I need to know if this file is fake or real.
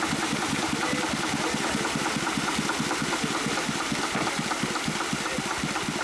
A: real